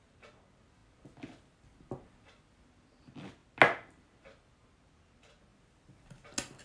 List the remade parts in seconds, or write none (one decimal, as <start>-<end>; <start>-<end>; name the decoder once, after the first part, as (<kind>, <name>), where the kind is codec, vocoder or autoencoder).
none